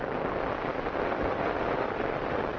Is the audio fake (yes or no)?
no